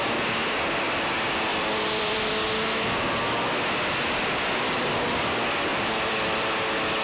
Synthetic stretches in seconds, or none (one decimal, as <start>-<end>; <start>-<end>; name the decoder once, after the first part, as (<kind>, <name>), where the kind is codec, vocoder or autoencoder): 1.5-2.3 (vocoder, BigVGAN v2); 3.9-5.2; 5.7-6.5